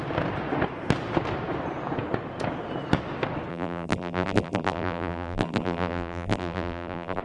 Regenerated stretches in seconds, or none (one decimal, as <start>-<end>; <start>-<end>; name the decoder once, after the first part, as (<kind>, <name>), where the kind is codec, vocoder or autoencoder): 3.5-7.2 (vocoder, BigVGAN v2)